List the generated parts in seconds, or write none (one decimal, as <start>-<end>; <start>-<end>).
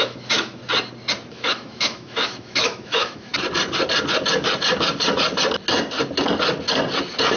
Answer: 0.0-0.6; 1.3-3.3